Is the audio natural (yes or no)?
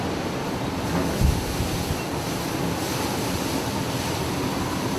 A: yes